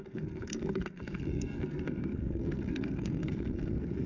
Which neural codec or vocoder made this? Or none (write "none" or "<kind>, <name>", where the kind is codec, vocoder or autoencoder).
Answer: codec, SNAC